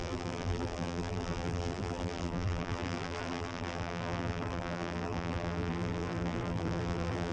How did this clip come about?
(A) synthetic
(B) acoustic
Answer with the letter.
A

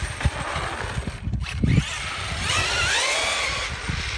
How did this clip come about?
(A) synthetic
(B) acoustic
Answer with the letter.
B